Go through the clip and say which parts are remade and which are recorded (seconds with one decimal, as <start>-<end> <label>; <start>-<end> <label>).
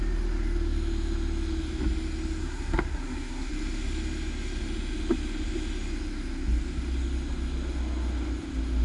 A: 0.0-2.4 recorded; 2.4-3.5 remade; 3.5-8.8 recorded